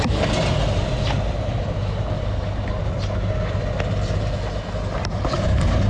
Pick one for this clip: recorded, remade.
recorded